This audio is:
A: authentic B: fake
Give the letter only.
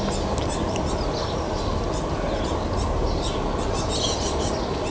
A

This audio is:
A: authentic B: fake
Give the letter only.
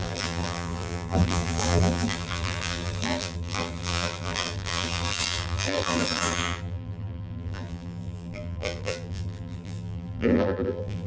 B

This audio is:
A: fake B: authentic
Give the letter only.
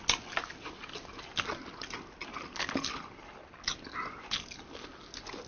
B